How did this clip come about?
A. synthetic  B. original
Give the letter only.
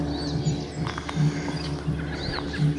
B